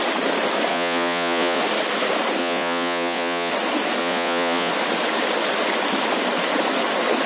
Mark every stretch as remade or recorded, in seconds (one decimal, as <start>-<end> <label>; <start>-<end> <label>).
0.0-0.7 recorded; 0.7-1.6 remade; 1.6-2.4 recorded; 2.4-3.5 remade; 3.5-4.0 recorded; 4.0-4.7 remade; 4.7-7.3 recorded